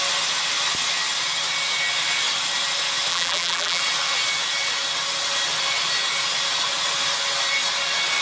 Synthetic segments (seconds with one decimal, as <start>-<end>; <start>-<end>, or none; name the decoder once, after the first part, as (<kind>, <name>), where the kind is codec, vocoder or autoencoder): 3.1-3.8 (vocoder, BigVGAN v2)